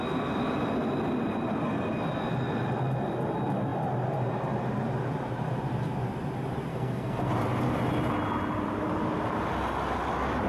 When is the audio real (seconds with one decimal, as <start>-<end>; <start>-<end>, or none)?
0.0-6.7; 7.3-10.5